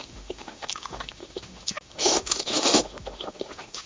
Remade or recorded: remade